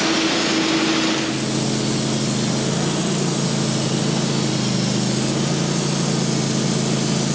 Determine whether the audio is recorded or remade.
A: recorded